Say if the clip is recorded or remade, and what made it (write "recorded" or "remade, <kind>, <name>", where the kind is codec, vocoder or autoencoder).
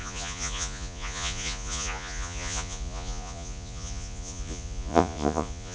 remade, vocoder, Vocos